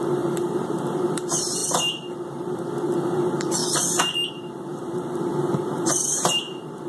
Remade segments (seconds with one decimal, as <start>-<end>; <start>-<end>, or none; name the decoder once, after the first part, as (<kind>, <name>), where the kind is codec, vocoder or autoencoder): 0.0-3.6 (vocoder, BigVGAN v2); 4.3-6.9